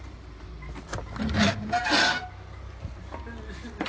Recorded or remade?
recorded